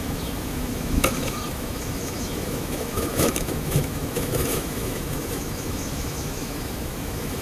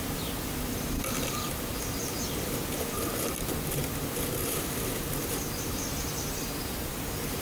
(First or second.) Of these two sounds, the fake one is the first